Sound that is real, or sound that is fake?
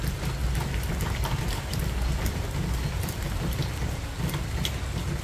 real